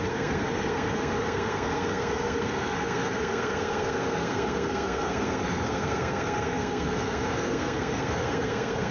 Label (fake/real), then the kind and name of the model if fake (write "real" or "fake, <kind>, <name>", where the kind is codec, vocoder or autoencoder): fake, codec, SNAC